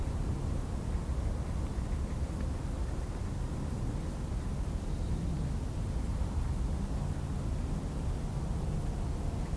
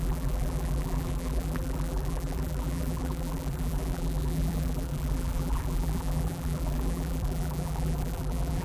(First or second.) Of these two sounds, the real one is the first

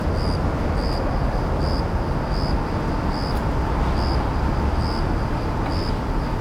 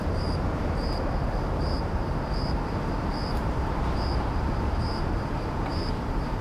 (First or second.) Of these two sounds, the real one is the first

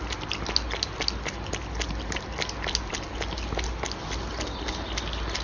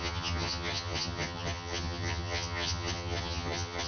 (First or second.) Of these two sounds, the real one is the first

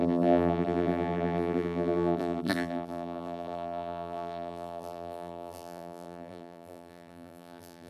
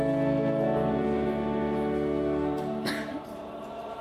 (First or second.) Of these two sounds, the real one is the second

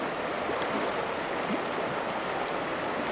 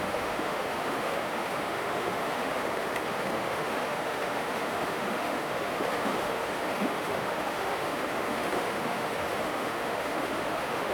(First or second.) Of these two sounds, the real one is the first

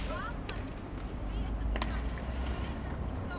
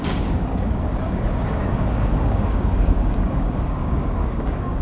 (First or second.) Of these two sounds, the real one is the first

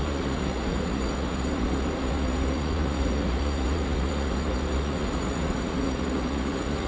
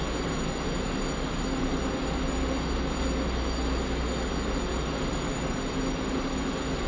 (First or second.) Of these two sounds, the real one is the second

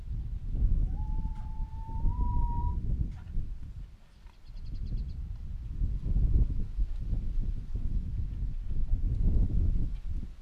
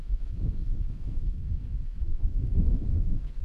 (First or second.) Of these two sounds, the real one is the first